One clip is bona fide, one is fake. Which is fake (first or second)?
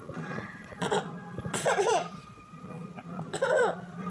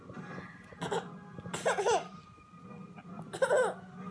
first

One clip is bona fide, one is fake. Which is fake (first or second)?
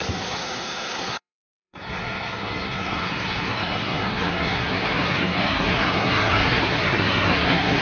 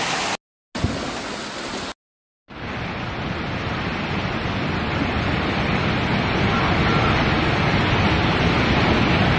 first